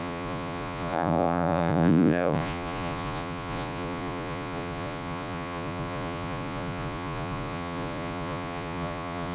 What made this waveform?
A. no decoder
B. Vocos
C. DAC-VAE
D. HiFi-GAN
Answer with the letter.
B